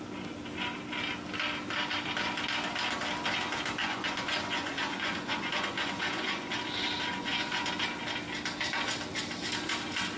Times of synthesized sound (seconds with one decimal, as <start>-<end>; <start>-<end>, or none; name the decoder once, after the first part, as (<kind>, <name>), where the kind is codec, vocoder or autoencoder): 3.8-6.5 (vocoder, Vocos); 7.1-7.7